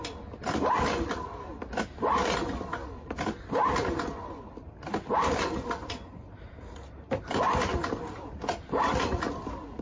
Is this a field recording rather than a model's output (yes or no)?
yes